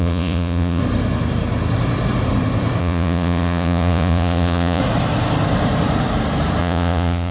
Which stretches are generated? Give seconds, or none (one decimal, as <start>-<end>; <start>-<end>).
0.0-0.8; 2.8-4.8; 6.6-7.3